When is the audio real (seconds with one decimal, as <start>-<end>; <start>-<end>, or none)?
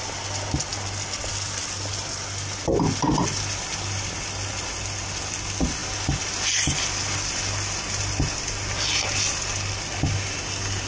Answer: 0.0-10.9